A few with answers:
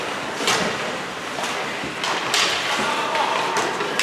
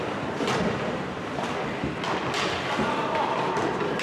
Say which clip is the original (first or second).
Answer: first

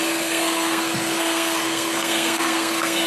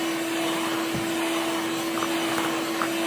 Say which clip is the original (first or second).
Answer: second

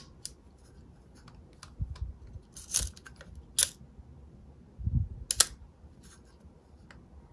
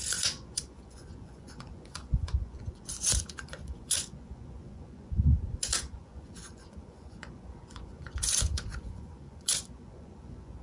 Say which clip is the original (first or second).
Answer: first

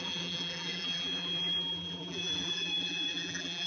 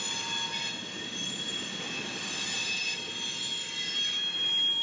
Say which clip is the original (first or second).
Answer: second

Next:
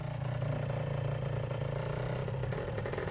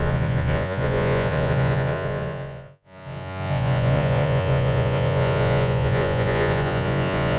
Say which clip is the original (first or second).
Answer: first